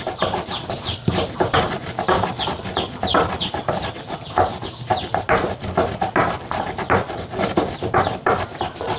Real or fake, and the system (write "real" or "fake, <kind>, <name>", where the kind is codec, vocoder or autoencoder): real